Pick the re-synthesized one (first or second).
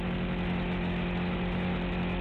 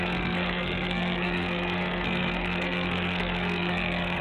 second